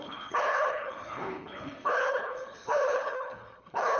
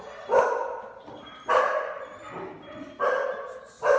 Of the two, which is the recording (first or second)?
second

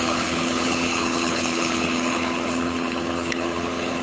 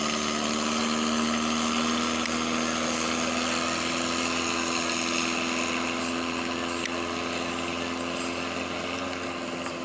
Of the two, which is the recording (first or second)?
second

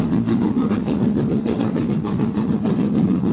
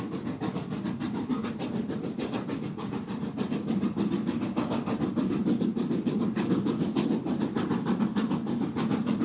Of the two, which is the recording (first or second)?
second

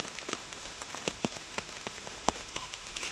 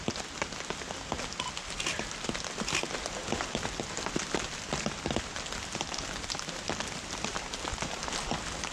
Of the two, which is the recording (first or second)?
second